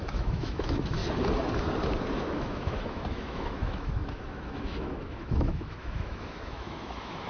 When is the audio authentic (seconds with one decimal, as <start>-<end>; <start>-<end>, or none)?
1.0-2.2